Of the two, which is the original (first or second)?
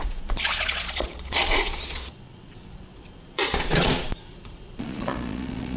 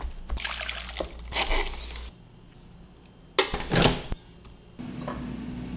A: second